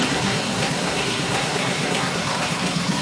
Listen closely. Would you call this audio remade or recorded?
remade